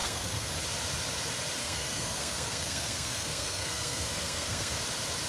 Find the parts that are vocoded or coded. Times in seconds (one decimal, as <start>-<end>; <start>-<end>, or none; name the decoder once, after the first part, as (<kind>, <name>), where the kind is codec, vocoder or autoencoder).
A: 0.0-0.5 (codec, SNAC); 1.6-4.8